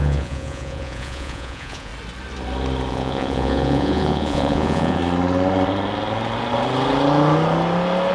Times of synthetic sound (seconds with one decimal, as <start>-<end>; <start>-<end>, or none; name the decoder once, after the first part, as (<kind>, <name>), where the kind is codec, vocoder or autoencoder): 0.0-1.9 (vocoder, Vocos); 2.9-5.0